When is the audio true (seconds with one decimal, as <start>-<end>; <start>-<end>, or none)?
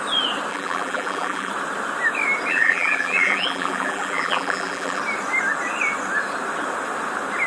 0.0-0.5; 1.5-2.5; 5.0-7.5